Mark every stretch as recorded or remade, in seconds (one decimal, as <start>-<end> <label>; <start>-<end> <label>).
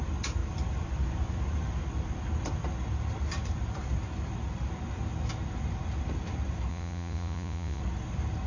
0.0-6.7 recorded; 6.7-7.8 remade; 7.8-8.5 recorded